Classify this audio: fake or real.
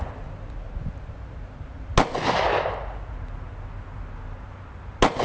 real